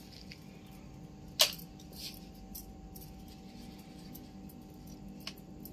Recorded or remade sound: recorded